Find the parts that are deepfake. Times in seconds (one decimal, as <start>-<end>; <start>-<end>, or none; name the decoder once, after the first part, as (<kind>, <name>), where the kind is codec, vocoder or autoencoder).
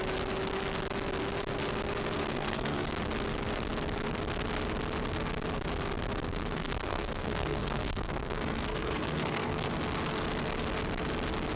2.2-2.9 (codec, SNAC); 6.4-9.7